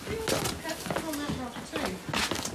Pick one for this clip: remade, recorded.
recorded